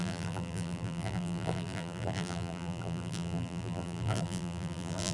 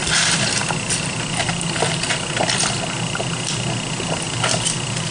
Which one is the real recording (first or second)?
second